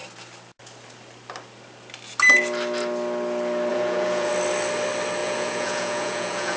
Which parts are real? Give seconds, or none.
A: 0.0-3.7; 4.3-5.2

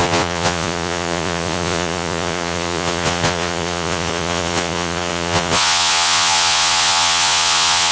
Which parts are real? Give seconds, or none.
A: none

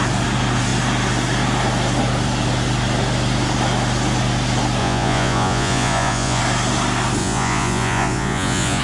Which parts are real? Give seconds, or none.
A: 0.0-4.8; 6.4-7.2

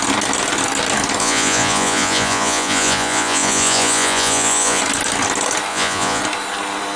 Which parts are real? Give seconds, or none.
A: 0.0-1.2; 4.8-5.7; 6.2-7.0

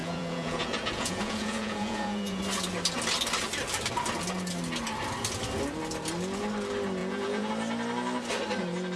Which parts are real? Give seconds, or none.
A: 2.4-7.0; 7.5-9.0

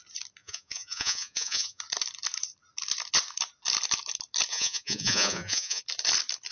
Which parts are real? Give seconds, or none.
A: 0.0-0.4; 1.8-4.5; 5.8-6.5

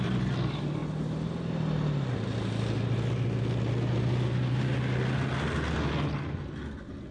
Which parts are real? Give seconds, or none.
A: 0.0-7.1

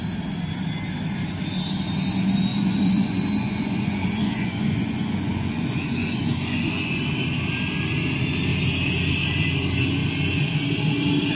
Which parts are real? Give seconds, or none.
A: 0.0-2.5; 7.0-11.3